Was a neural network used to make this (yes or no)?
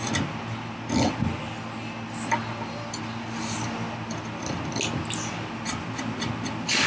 no